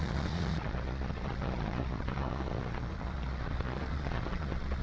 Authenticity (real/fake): fake